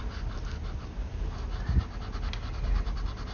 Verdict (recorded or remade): recorded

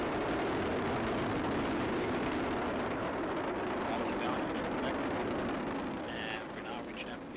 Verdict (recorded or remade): recorded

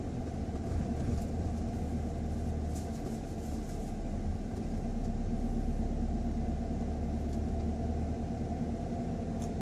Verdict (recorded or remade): recorded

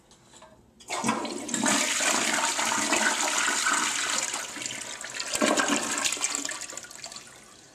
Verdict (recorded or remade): recorded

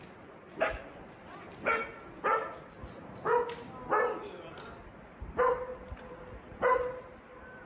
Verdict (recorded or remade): recorded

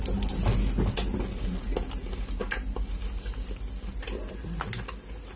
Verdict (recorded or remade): recorded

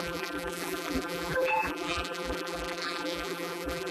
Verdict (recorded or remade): remade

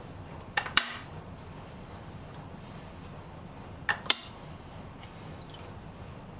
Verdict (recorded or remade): remade